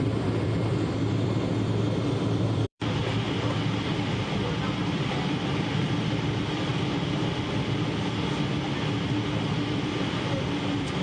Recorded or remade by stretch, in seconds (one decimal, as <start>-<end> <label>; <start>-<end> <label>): 0.0-6.7 remade; 6.7-10.0 recorded; 10.0-11.0 remade